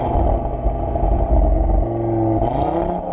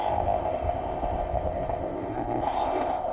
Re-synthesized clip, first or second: second